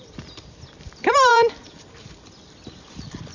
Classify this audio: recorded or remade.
remade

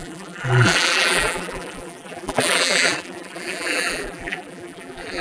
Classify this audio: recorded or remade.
remade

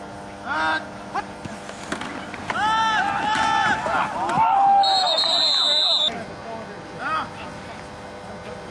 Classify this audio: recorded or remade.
recorded